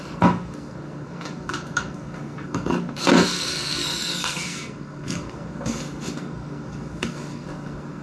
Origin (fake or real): fake